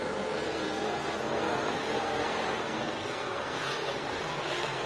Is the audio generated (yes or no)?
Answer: yes